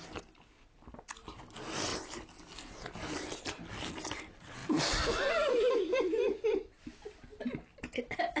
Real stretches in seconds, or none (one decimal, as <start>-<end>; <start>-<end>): 0.0-4.6; 7.5-8.4

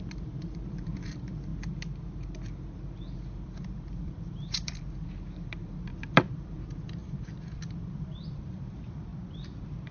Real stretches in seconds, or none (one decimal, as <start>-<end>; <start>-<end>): 1.5-3.6; 9.1-9.9

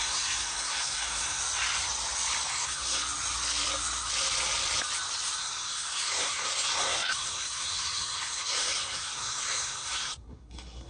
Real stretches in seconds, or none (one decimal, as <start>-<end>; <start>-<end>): 1.4-2.5; 3.0-5.4

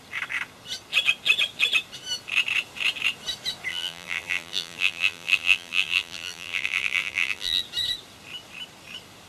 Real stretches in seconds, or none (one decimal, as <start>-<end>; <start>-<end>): 0.0-3.7; 7.6-9.3

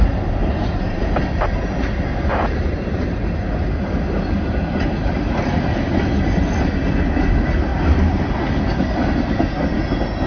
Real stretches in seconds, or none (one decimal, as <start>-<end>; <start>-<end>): 0.0-0.4; 1.0-2.3; 3.2-7.7; 8.2-10.3

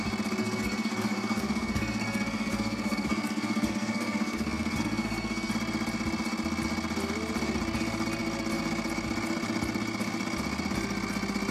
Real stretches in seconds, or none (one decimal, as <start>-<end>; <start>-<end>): 0.0-0.4; 5.5-11.5

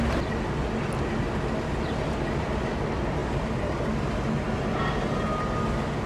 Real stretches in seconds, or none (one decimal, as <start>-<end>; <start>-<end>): 0.0-6.1

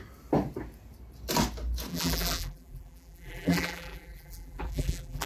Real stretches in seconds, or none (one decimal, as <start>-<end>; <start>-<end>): 0.0-1.9